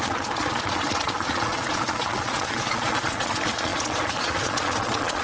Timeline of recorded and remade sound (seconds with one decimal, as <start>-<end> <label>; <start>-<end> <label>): 0.0-5.2 remade